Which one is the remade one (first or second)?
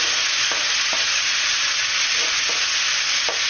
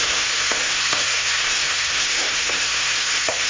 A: second